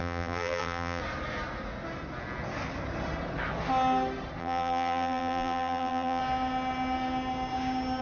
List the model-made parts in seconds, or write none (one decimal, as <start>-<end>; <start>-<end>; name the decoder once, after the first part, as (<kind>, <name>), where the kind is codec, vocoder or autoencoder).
0.0-1.0 (vocoder, BigVGAN v2); 4.4-6.2